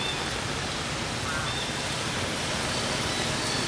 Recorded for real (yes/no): yes